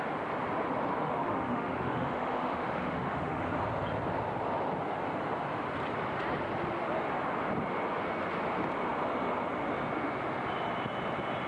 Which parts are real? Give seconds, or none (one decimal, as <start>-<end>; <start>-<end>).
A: 0.0-1.0; 3.4-11.5